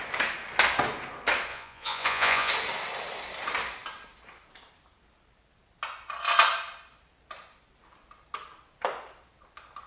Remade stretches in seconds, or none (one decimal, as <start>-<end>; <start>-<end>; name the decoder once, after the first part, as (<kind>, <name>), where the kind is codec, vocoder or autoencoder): 1.5-2.5 (vocoder, Vocos)